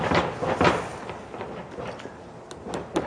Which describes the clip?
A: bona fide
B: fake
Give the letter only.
A